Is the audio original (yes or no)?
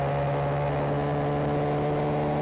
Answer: yes